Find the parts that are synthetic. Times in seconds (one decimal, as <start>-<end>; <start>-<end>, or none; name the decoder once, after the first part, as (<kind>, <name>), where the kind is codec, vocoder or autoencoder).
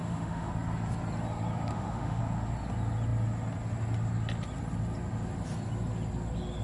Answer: 0.0-0.5 (autoencoder, DAC-VAE); 1.7-2.2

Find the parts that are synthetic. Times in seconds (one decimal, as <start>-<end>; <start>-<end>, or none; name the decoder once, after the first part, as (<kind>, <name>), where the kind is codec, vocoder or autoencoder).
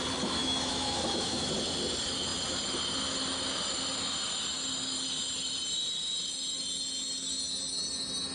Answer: 0.4-1.5 (autoencoder, DAC-VAE)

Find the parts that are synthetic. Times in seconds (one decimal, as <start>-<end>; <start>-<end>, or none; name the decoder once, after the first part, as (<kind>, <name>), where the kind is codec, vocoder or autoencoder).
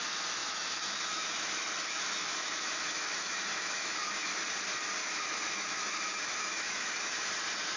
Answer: 0.4-4.3 (autoencoder, DAC-VAE); 5.0-7.3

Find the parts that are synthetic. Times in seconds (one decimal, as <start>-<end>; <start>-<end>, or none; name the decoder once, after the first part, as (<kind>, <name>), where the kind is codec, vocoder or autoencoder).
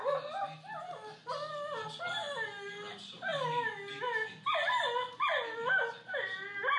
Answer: none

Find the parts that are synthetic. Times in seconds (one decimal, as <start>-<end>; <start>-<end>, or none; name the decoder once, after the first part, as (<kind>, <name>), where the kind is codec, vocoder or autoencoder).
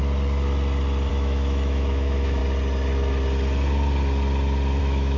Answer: 1.1-2.4 (autoencoder, DAC-VAE); 4.8-5.2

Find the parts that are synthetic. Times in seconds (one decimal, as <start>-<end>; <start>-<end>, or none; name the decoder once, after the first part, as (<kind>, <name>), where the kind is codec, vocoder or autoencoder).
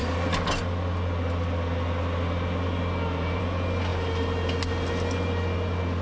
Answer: none